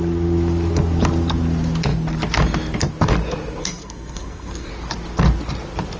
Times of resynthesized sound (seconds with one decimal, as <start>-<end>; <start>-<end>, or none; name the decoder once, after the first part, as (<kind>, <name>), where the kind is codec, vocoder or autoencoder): 3.6-4.7 (codec, SNAC)

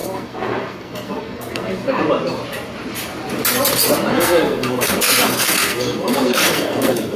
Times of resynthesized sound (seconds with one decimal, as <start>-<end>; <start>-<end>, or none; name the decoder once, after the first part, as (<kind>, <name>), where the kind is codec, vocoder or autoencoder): 0.0-2.0 (codec, SNAC); 4.1-7.2